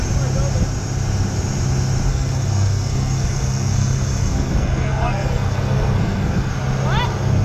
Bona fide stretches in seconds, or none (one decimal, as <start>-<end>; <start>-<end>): 0.0-2.1; 6.5-7.4